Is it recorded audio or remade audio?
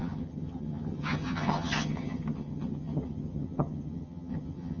remade